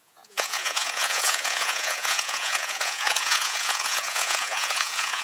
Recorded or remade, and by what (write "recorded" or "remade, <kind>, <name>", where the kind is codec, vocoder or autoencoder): remade, vocoder, Vocos